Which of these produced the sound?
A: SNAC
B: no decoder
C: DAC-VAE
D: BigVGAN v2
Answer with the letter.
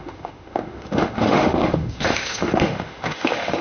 C